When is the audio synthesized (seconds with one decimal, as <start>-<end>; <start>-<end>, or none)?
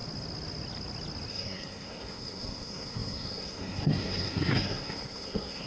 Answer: 1.3-5.7